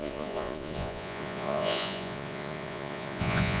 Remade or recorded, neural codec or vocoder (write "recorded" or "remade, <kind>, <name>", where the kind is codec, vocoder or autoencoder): remade, vocoder, Vocos